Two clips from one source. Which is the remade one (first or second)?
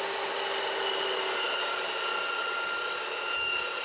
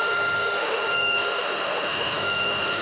second